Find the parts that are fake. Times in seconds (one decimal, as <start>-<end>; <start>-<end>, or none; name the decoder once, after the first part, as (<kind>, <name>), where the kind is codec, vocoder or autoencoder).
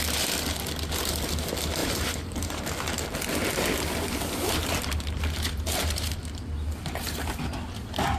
1.8-2.7 (vocoder, BigVGAN v2); 4.6-6.4